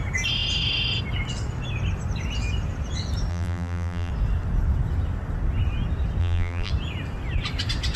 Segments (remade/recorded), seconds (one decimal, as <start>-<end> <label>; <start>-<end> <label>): 0.0-3.3 recorded; 3.3-4.1 remade; 4.1-6.2 recorded; 6.2-6.7 remade; 6.7-8.0 recorded